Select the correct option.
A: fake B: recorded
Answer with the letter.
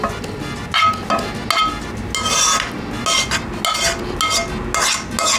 B